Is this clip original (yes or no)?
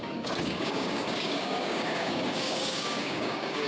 no